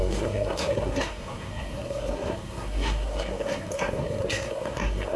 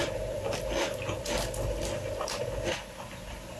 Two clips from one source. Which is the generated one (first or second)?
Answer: first